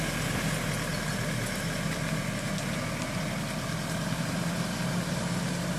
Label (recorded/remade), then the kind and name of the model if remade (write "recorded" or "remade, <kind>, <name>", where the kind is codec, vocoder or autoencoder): recorded